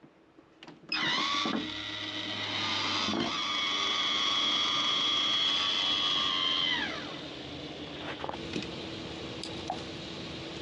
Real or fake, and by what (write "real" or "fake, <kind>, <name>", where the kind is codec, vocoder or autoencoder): real